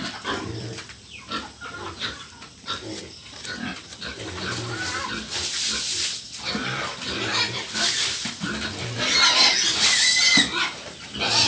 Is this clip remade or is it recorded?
recorded